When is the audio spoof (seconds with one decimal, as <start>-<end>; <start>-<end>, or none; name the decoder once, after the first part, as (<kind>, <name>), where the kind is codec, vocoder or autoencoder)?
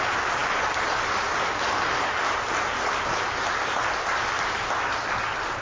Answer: none